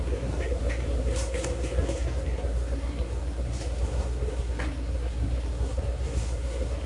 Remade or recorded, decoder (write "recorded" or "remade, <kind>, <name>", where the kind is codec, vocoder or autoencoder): remade, codec, SNAC